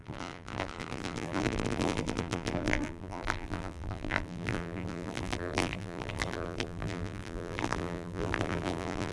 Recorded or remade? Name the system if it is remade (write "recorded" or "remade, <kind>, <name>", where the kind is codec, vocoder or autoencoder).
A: remade, vocoder, BigVGAN v2